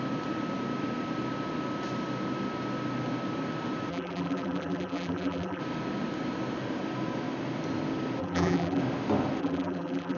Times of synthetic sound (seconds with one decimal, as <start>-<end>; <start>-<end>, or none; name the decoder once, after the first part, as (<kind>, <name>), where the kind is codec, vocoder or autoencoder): 3.9-5.6 (vocoder, BigVGAN v2); 8.2-8.8; 9.4-10.2